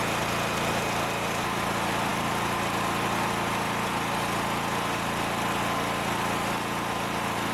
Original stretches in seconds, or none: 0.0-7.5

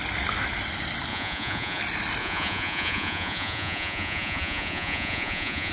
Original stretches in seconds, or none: 0.0-1.1; 1.8-2.2

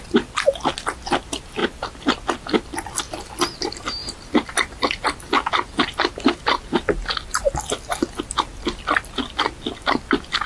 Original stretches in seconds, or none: 0.0-10.5

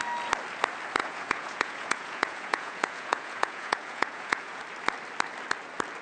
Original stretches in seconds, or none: 0.0-1.0; 4.6-6.0

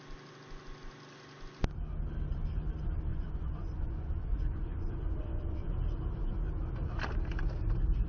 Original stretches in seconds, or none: 0.0-3.1; 5.7-8.1

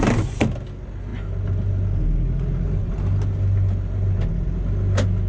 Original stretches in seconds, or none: 0.0-5.3

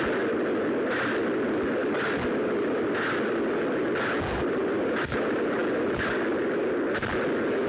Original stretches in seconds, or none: 0.0-7.7